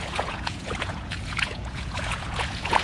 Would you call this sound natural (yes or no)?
no